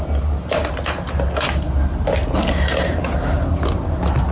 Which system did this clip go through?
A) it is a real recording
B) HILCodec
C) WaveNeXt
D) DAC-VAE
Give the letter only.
A